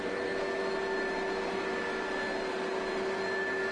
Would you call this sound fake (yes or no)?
no